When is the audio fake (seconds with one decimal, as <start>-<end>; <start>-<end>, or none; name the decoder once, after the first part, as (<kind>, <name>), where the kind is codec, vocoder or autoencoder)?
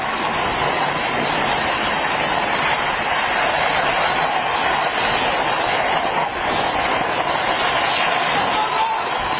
6.3-6.9 (vocoder, Vocos)